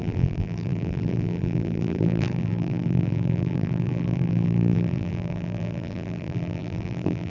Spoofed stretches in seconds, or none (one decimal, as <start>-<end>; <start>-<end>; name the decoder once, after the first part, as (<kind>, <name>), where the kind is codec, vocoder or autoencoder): 0.0-7.3 (vocoder, BigVGAN v2)